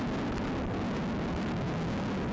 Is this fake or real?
real